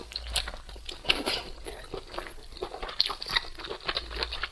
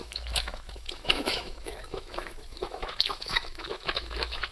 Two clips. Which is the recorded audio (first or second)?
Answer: first